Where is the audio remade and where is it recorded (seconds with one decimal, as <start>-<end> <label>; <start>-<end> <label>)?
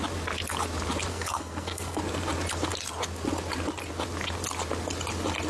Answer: 0.0-1.1 recorded; 1.1-2.0 remade; 2.0-5.5 recorded